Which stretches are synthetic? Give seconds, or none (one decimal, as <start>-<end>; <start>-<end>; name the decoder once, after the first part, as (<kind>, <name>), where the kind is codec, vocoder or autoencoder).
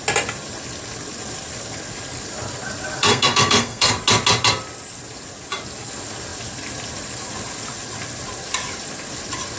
3.0-3.9 (codec, SNAC)